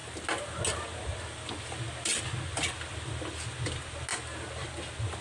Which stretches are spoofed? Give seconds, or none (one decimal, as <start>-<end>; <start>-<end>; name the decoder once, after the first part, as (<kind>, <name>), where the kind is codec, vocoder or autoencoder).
none